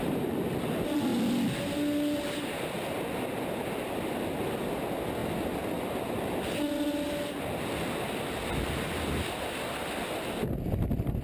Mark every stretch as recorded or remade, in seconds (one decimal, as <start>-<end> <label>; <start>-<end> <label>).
0.0-11.2 recorded